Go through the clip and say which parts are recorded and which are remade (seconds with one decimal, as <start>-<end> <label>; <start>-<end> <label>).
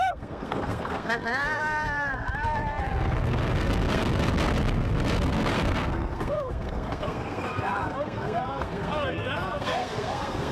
0.0-10.5 remade